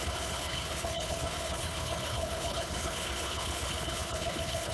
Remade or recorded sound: remade